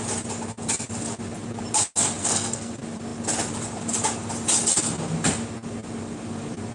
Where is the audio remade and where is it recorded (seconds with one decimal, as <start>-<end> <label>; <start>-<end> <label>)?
0.0-2.2 recorded; 2.2-2.7 remade; 2.7-6.7 recorded